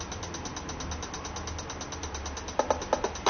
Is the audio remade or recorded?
recorded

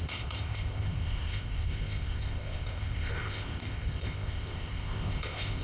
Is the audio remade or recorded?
remade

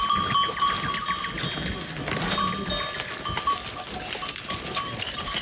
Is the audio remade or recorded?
recorded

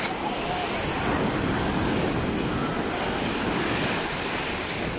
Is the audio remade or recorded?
recorded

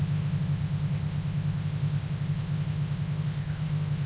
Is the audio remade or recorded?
remade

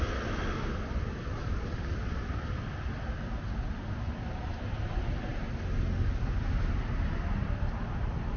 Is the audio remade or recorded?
recorded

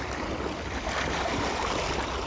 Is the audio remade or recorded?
recorded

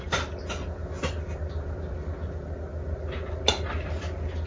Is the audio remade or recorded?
recorded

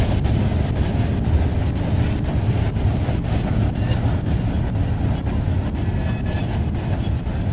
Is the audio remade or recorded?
recorded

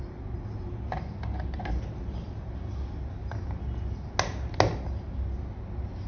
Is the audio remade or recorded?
recorded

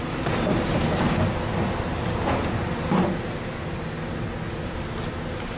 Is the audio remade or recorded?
recorded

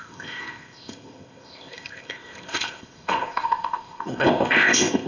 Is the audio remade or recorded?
remade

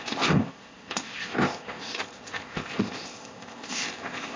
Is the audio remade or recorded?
remade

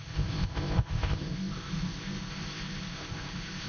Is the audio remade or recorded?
remade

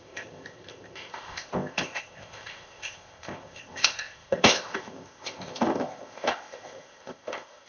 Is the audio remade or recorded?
remade